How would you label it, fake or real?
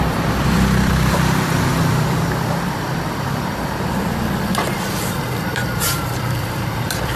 fake